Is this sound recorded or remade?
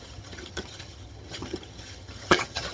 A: remade